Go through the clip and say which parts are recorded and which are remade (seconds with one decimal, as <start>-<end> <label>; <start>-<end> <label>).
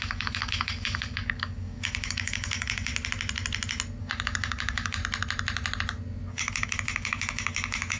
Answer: 0.0-2.9 remade; 2.9-4.0 recorded; 4.0-5.0 remade; 5.0-6.3 recorded; 6.3-8.0 remade